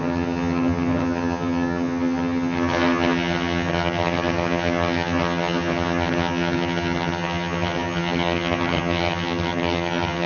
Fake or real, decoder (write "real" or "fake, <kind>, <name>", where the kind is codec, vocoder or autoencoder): fake, vocoder, HiFi-GAN